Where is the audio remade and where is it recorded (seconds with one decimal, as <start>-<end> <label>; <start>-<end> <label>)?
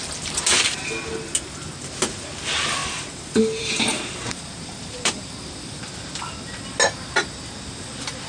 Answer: 0.0-2.8 recorded; 2.8-5.8 remade; 5.8-8.3 recorded